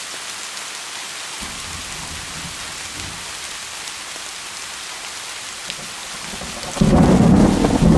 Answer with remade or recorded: recorded